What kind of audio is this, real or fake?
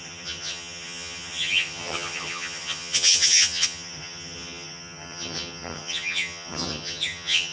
fake